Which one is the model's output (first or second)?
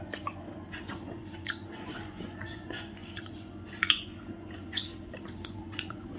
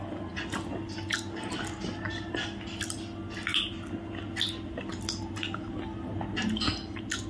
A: first